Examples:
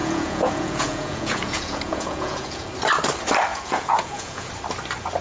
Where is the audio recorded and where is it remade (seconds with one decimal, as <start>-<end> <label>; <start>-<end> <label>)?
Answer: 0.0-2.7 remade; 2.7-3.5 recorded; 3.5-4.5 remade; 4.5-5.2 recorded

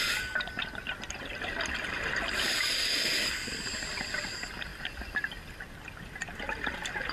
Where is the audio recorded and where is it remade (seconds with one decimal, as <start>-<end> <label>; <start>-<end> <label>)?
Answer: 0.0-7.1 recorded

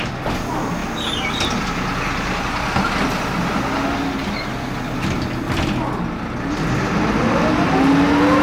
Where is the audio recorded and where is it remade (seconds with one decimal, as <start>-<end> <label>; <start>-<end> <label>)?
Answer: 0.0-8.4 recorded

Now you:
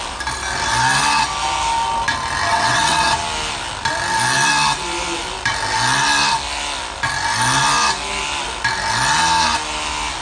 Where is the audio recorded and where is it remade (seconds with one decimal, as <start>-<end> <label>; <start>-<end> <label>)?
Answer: 0.0-2.5 recorded; 2.5-3.1 remade; 3.1-10.2 recorded

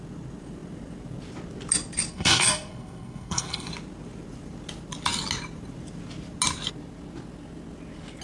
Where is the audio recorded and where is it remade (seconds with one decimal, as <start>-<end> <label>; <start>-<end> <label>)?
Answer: 0.0-2.1 recorded; 2.1-3.7 remade; 3.7-8.2 recorded

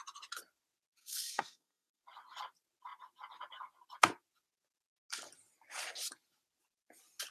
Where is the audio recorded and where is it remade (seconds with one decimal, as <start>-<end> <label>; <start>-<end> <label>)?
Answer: 0.0-1.0 recorded; 1.0-2.0 remade; 2.0-7.3 recorded

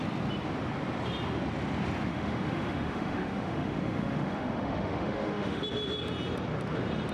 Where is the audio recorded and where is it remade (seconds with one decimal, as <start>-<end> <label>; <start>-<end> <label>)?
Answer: 0.0-2.1 recorded; 2.1-5.6 remade; 5.6-7.1 recorded